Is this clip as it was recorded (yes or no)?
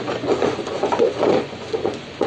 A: no